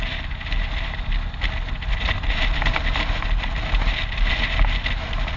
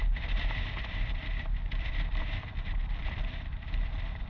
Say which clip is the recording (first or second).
first